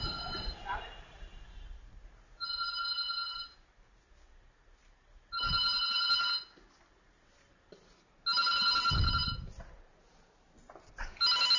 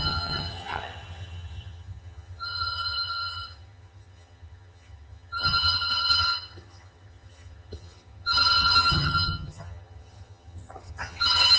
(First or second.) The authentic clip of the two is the first